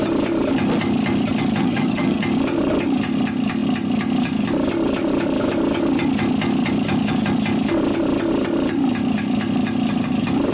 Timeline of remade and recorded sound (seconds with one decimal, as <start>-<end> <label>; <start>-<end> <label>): 0.0-1.6 recorded; 1.6-2.2 remade; 2.2-10.5 recorded